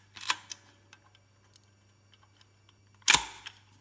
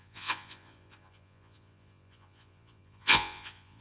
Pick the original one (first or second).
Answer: first